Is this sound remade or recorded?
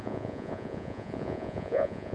remade